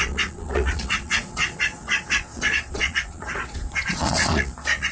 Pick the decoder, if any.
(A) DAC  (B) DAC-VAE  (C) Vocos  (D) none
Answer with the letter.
C